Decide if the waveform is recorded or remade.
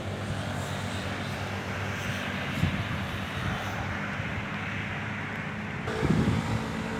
recorded